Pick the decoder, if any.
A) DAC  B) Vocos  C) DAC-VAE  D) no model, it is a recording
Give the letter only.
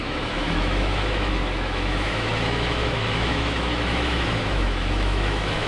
C